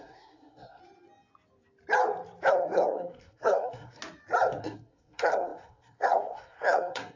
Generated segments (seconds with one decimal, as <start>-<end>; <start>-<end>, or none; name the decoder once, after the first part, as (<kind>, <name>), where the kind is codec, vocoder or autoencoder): 0.0-0.8 (codec, SNAC); 2.5-4.0; 4.6-7.2